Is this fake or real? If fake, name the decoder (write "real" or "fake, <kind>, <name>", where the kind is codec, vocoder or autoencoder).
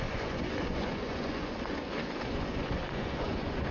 fake, vocoder, Vocos